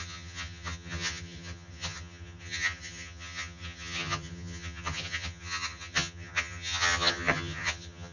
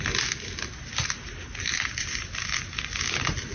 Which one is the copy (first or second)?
first